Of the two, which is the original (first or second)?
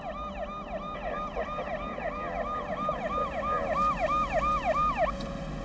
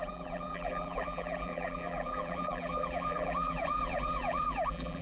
first